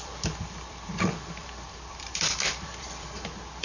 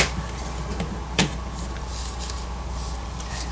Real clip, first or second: second